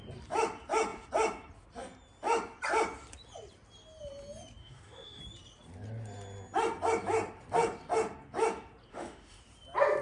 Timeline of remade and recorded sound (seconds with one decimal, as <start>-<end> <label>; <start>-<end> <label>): 0.0-4.6 recorded; 4.6-5.2 remade; 5.2-8.9 recorded; 8.9-9.4 remade; 9.4-10.0 recorded